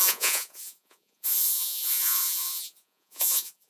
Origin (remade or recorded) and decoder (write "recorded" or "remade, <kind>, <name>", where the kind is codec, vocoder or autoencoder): remade, vocoder, Vocos